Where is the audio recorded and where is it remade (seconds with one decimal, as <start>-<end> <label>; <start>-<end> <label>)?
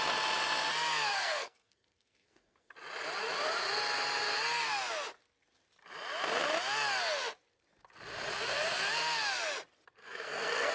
0.0-1.1 recorded; 1.1-2.7 remade; 2.7-10.0 recorded; 10.0-10.7 remade